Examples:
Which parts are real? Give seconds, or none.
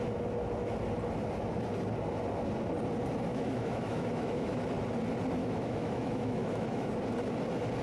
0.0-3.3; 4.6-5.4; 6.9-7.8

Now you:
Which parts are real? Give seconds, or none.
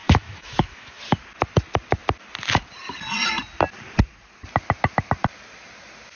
1.0-6.2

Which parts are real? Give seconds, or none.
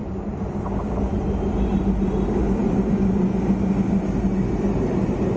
0.0-5.4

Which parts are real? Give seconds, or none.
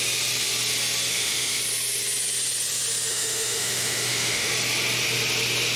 0.0-1.1; 1.6-3.1; 4.5-5.8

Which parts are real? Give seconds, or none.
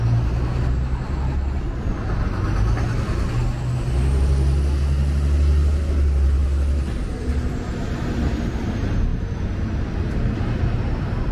0.0-11.3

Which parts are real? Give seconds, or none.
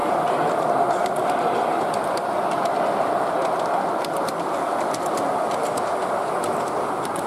0.0-7.3